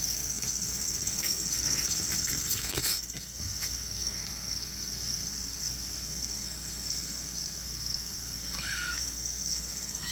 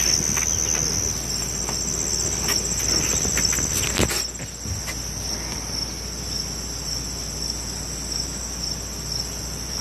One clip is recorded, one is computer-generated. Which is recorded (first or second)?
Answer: second